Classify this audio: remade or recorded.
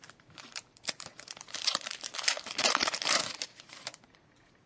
remade